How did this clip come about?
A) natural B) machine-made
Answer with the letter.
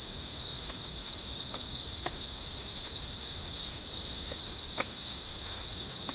B